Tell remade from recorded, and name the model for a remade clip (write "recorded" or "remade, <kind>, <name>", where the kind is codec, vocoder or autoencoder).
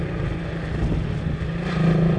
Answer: recorded